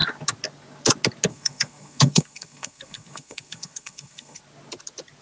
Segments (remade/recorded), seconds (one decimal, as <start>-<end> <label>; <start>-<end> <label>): 0.0-1.3 recorded; 1.3-4.4 remade; 4.4-5.2 recorded